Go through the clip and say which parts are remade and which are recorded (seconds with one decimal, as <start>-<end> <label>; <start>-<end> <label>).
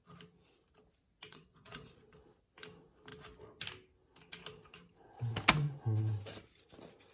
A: 0.0-1.3 recorded; 1.3-1.9 remade; 1.9-7.1 recorded